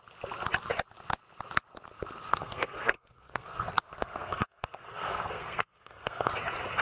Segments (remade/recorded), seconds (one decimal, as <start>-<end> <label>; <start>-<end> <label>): 0.0-2.3 recorded; 2.3-6.3 remade; 6.3-6.8 recorded